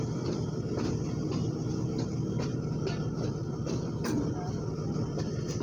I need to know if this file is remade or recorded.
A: recorded